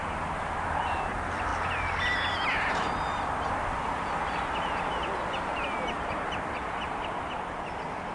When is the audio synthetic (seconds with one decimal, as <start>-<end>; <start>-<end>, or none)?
none

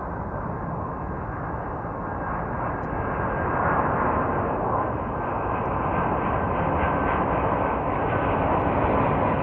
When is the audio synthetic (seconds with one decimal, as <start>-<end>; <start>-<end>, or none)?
none